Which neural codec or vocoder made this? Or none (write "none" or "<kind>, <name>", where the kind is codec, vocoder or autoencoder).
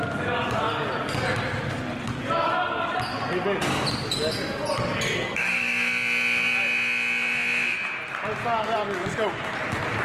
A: none